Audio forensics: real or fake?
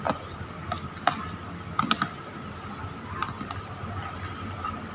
real